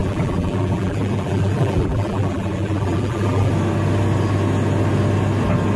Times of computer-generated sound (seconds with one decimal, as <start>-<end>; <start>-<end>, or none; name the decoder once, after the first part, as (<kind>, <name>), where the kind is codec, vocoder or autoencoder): 0.0-3.5 (vocoder, BigVGAN v2)